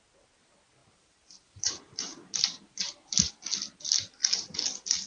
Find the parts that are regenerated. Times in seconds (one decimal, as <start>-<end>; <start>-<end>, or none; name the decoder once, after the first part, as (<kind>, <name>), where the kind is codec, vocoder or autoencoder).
0.8-3.3 (vocoder, BigVGAN v2)